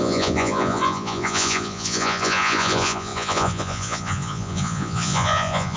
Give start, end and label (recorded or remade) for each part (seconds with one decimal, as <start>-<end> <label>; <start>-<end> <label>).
0.0-5.8 remade